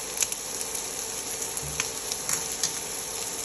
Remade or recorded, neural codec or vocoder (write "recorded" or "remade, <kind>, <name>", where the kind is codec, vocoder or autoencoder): recorded